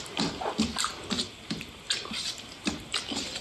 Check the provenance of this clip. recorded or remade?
recorded